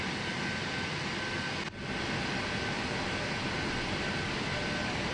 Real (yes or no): yes